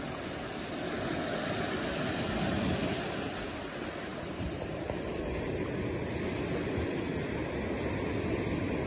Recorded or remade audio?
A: recorded